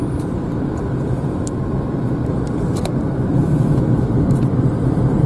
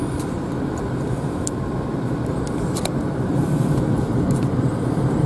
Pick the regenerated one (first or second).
second